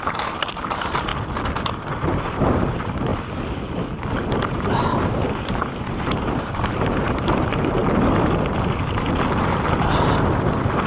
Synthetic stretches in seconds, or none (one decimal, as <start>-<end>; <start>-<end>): 0.0-1.1; 1.7-3.1; 4.5-7.8